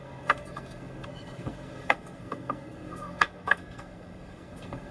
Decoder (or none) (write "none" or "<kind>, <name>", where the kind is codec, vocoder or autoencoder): codec, SNAC